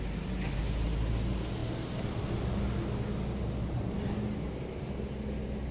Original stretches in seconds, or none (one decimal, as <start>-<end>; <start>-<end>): 0.0-5.7

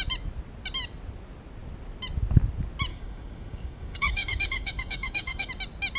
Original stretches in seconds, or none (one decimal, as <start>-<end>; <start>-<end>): 0.0-2.9; 5.5-6.0

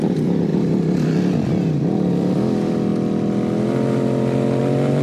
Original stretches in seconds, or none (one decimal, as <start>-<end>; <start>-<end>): 0.5-2.1; 2.9-4.6